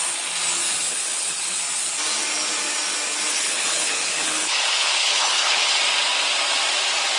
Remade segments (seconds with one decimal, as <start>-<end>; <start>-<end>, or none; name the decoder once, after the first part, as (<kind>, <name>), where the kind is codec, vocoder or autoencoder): 0.9-1.6 (codec, HILCodec); 3.3-5.8